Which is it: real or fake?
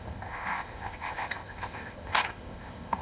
fake